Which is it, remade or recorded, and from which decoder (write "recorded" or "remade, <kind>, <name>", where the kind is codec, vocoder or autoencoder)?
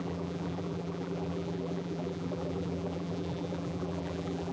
remade, vocoder, BigVGAN v2